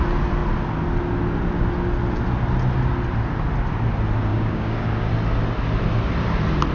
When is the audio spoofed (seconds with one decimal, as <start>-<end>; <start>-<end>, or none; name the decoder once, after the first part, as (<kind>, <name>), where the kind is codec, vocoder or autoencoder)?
4.3-5.1 (codec, DAC)